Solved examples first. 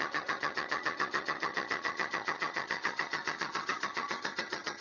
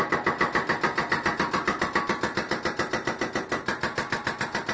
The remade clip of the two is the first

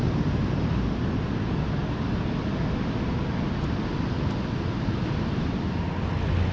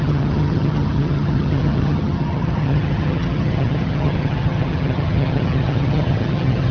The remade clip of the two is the second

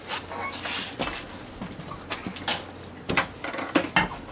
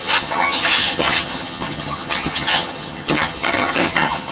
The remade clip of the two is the second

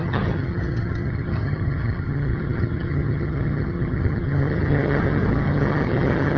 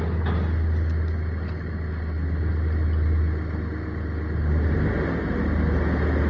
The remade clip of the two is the first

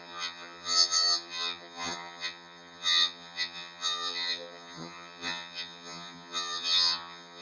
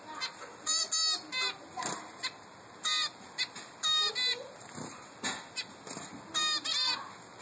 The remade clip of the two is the first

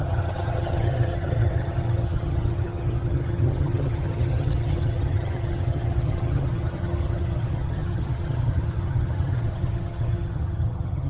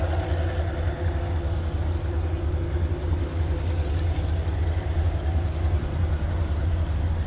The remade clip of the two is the first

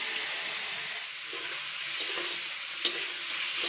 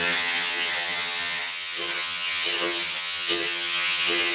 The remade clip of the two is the second